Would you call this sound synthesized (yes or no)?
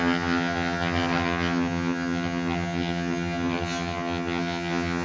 yes